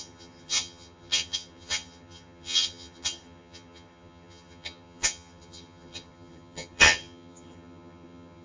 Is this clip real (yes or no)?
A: no